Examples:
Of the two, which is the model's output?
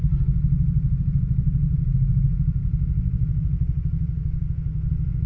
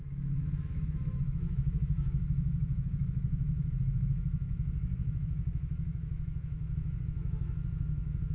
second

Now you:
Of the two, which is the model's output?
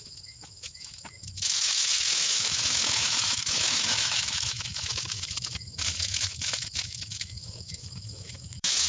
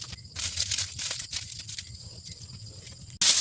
first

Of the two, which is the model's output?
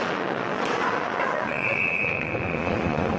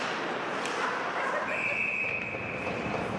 first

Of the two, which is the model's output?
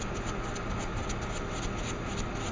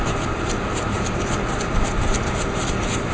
second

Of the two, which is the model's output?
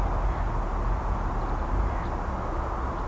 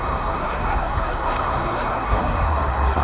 second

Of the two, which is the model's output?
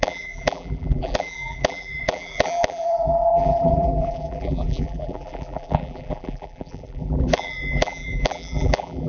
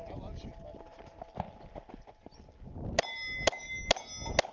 first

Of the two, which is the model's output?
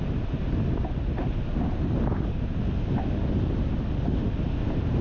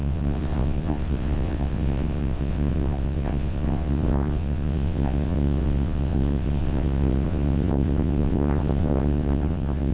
second